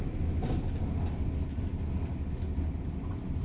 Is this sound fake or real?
real